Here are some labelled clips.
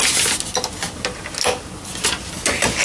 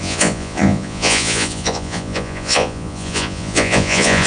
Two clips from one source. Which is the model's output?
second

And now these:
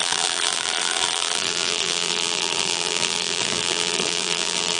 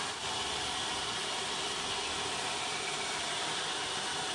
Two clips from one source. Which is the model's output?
first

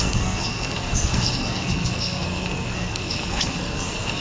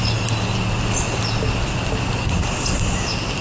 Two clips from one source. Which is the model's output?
first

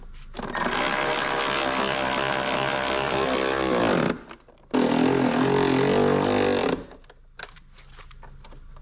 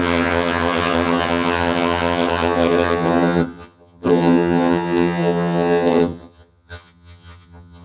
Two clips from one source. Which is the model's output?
second